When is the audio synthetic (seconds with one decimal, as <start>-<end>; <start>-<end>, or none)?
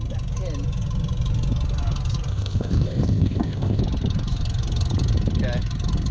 2.3-3.8